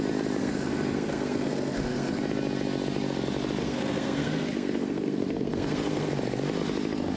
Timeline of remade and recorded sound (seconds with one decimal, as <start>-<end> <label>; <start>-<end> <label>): 0.0-0.4 recorded; 0.4-2.2 remade; 2.2-3.6 recorded; 3.6-6.1 remade; 6.1-7.2 recorded